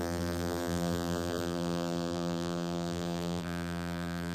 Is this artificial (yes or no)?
yes